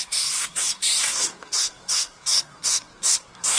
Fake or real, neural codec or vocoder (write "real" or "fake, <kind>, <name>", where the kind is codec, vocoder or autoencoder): fake, codec, SNAC